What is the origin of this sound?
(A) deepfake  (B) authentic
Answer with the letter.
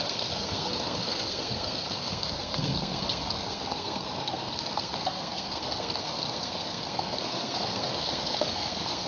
A